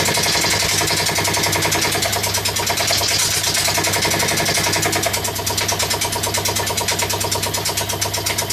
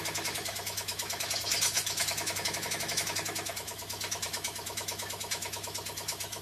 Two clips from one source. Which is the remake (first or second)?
second